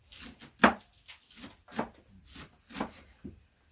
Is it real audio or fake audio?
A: real